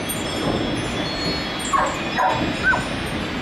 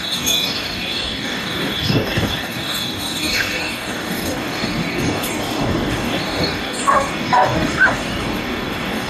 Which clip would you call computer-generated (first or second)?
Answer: second